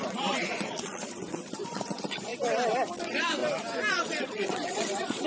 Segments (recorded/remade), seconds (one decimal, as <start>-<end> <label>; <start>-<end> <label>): 0.0-2.3 remade; 2.3-3.0 recorded; 3.0-3.4 remade; 3.4-3.9 recorded; 3.9-5.3 remade